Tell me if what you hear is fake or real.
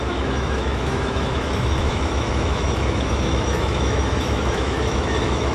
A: fake